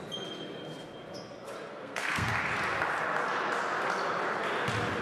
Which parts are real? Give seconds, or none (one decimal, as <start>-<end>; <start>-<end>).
0.0-1.7; 2.3-5.0